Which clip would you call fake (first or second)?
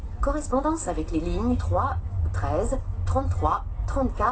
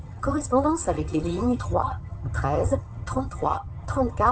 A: second